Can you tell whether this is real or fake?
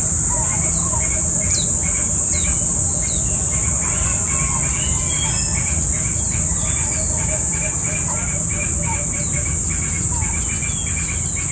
real